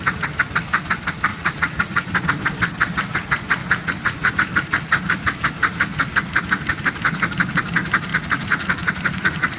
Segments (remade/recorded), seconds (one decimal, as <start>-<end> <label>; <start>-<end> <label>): 0.0-1.3 recorded; 1.3-2.2 remade; 2.2-3.6 recorded; 3.6-4.3 remade; 4.3-8.1 recorded; 8.1-9.6 remade